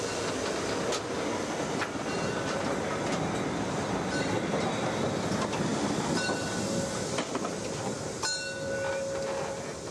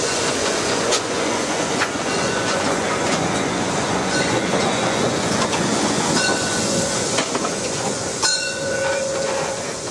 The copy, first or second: second